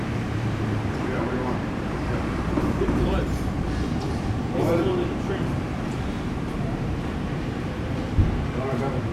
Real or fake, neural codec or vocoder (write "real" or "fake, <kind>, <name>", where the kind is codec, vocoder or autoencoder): fake, vocoder, BigVGAN v2